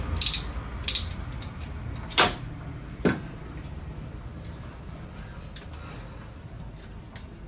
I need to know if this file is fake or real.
real